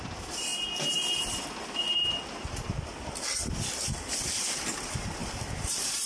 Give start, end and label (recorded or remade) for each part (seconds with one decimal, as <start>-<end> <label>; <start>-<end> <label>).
0.0-0.5 remade; 0.5-3.8 recorded; 3.8-6.1 remade